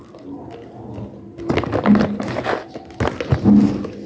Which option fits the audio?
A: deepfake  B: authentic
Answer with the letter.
B